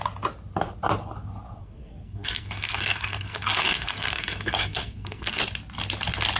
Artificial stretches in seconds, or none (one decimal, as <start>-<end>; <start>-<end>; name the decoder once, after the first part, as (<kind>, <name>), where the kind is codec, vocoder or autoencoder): 1.6-5.4 (codec, SNAC)